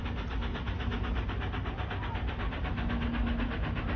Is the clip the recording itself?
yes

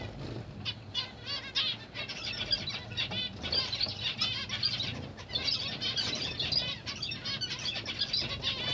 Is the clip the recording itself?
yes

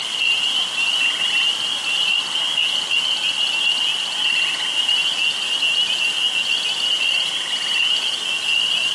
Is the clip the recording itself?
yes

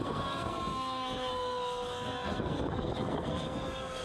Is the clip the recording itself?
no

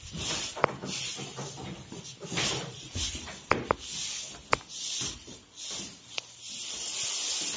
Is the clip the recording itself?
yes